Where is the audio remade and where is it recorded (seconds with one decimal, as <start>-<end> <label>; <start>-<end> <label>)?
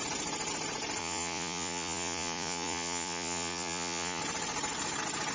0.0-1.0 recorded; 1.0-4.2 remade; 4.2-5.3 recorded